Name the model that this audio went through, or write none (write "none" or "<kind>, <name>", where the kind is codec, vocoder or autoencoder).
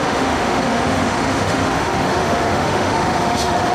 autoencoder, DAC-VAE